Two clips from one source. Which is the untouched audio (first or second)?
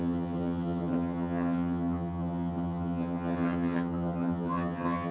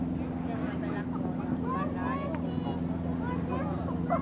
second